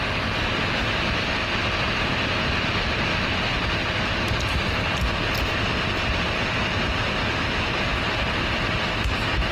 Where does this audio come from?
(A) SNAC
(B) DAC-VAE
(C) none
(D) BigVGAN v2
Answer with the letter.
C